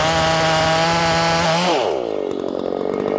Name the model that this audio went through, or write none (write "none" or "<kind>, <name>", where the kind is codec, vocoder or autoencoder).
none